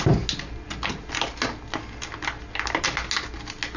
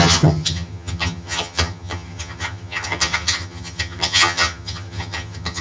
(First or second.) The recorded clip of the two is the first